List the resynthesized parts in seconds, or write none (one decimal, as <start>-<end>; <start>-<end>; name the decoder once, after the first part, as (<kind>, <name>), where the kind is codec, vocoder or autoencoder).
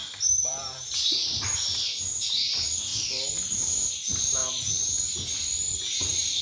0.0-2.1 (vocoder, BigVGAN v2)